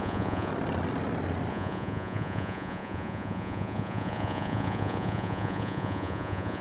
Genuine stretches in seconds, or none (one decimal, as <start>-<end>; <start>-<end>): 0.5-1.5